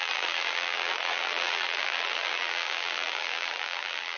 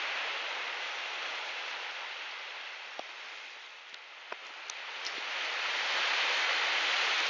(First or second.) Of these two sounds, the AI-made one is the first